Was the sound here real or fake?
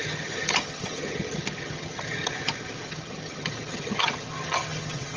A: fake